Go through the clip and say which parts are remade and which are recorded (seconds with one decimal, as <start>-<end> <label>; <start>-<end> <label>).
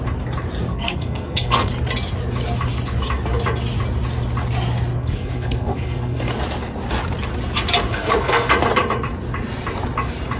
0.0-0.7 recorded; 0.7-1.7 remade; 1.7-5.0 recorded; 5.0-6.3 remade; 6.3-7.9 recorded; 7.9-8.5 remade; 8.5-10.4 recorded